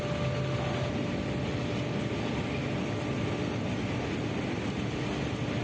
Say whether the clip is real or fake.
real